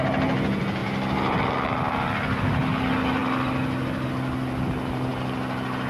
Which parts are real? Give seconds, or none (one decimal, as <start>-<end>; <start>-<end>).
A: 0.0-5.9